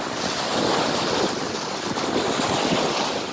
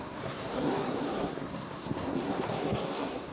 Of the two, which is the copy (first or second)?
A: second